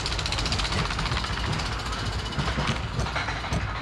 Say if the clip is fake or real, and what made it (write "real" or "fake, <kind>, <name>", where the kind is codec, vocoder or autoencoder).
real